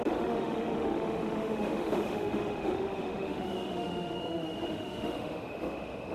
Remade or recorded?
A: remade